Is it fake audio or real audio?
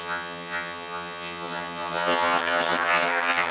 fake